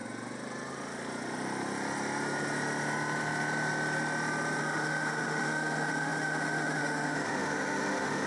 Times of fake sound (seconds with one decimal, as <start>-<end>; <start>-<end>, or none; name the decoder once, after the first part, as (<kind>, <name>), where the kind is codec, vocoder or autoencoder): 4.6-8.3 (autoencoder, DAC-VAE)